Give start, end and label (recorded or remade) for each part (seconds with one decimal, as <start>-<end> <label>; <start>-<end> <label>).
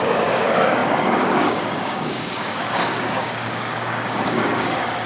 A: 0.0-5.1 remade